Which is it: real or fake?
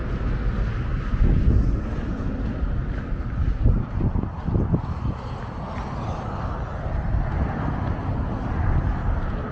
real